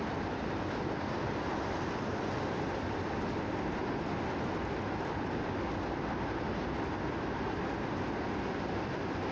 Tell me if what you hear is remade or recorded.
recorded